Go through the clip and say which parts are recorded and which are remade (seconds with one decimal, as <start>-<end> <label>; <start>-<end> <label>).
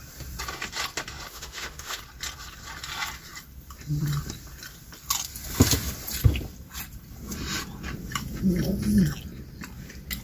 0.0-1.3 recorded; 1.3-2.0 remade; 2.0-10.2 recorded